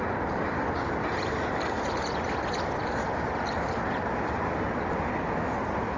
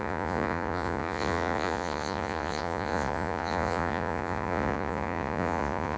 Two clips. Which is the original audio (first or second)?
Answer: first